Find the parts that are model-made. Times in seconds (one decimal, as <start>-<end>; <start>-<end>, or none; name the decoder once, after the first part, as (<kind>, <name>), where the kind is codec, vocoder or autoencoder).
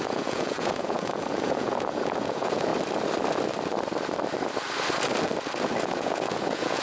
0.0-2.7 (vocoder, Vocos); 5.8-6.8